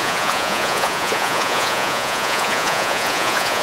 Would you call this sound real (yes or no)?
no